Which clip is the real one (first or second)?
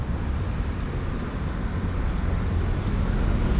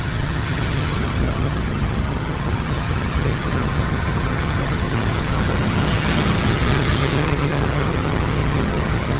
first